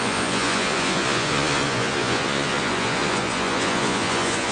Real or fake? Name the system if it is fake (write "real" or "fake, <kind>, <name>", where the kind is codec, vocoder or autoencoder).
fake, vocoder, Vocos